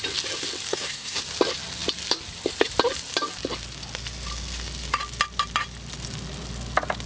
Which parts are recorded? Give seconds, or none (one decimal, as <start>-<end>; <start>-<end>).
0.0-0.7; 1.2-7.1

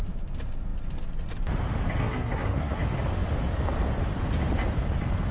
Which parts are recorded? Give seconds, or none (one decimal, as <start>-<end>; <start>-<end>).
0.0-2.0; 2.8-5.3